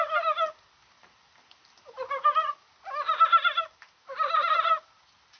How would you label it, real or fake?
real